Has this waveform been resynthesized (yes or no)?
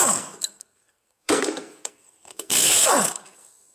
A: yes